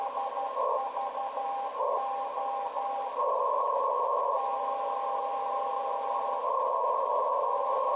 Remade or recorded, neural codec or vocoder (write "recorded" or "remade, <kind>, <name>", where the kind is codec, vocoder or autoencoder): recorded